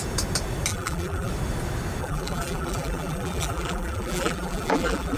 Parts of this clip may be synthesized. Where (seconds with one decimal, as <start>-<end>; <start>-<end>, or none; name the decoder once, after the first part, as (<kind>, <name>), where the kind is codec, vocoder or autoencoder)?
0.7-1.3 (vocoder, BigVGAN v2); 2.0-5.2